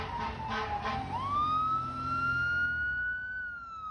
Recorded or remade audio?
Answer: recorded